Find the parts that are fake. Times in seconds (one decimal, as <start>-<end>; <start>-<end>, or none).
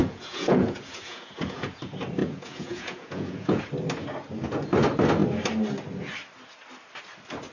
0.0-1.8; 2.2-3.6